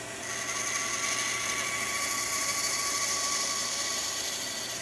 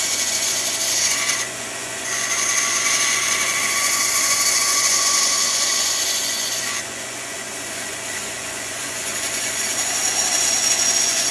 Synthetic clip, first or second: second